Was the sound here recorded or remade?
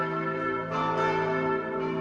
recorded